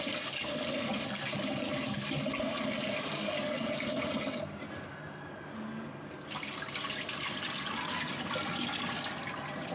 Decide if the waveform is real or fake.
real